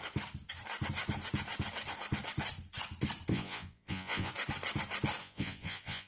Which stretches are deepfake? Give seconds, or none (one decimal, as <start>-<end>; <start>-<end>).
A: 3.3-4.3; 5.2-6.1